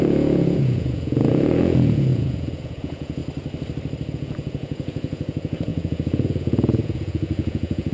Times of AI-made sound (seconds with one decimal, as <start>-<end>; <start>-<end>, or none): 0.0-3.2; 4.1-7.9